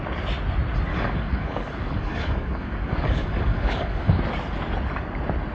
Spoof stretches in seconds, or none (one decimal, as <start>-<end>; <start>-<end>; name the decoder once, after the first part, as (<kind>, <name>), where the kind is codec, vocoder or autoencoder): 0.9-4.2 (codec, DAC)